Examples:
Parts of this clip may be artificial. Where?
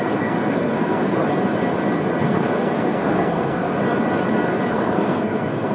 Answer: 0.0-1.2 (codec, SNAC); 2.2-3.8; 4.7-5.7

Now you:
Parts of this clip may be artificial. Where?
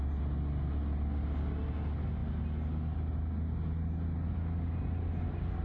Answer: none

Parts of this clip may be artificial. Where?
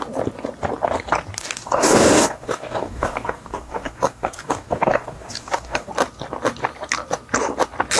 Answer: 1.4-5.9 (codec, DAC)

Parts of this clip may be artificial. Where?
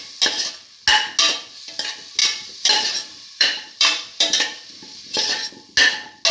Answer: 2.2-5.5 (vocoder, BigVGAN v2)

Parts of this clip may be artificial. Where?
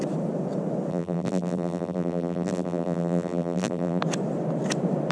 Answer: 0.9-4.0 (vocoder, BigVGAN v2)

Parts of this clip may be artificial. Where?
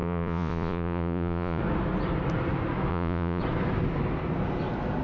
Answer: 0.0-1.6 (vocoder, Vocos); 2.9-3.4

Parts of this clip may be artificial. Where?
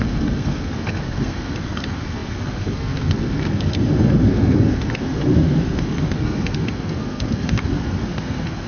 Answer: 0.0-8.7 (codec, SNAC)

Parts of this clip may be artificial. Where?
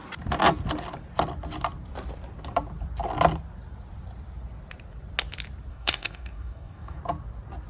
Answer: 5.7-7.0 (codec, DAC)